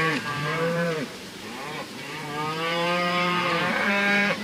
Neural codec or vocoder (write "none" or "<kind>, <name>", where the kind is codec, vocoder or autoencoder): vocoder, BigVGAN v2